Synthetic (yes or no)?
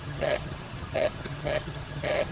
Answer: yes